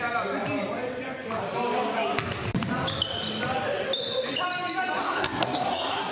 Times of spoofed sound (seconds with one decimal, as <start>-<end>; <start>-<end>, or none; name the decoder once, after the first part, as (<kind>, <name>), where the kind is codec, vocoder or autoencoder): 5.0-6.1 (codec, SNAC)